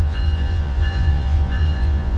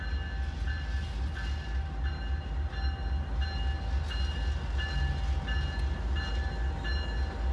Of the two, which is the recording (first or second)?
second